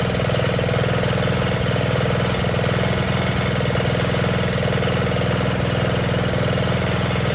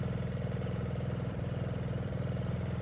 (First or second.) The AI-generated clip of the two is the second